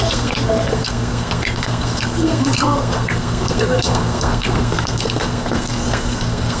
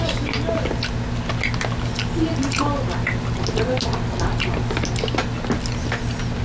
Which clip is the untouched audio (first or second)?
second